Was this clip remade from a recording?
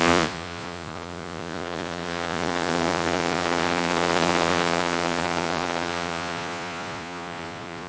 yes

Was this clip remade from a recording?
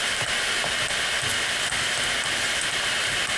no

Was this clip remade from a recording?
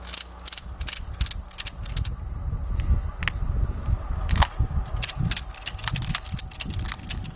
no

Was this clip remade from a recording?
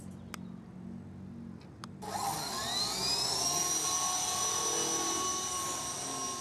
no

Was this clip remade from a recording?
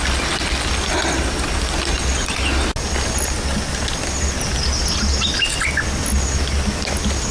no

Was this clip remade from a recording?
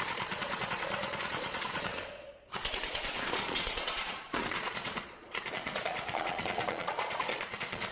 yes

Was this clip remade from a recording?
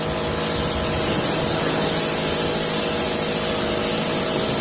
no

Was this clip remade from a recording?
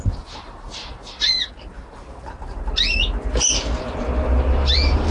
no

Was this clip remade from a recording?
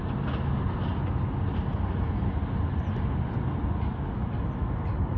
no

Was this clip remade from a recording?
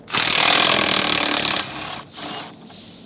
no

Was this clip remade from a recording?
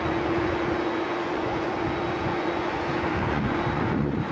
yes